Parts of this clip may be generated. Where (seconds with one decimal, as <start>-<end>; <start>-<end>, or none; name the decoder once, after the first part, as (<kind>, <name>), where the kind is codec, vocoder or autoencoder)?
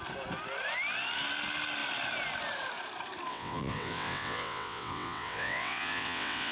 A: 3.3-6.5 (vocoder, WaveNeXt)